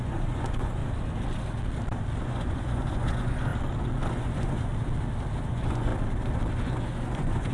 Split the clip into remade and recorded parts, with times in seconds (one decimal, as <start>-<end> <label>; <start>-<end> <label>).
0.0-0.8 remade; 0.8-2.2 recorded; 2.2-3.5 remade; 3.5-4.1 recorded; 4.1-4.7 remade; 4.7-5.5 recorded; 5.5-5.9 remade; 5.9-6.5 recorded; 6.5-7.5 remade